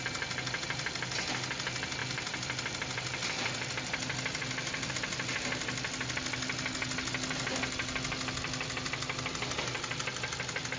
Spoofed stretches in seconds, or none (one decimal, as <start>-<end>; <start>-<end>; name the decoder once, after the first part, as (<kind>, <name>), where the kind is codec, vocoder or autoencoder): 2.0-4.9 (vocoder, BigVGAN v2)